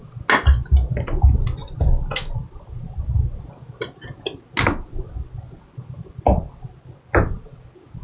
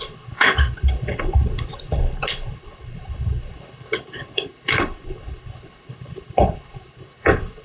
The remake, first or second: second